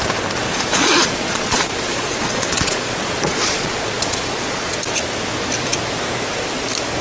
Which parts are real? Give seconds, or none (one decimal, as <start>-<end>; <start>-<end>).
0.0-0.5; 4.7-7.0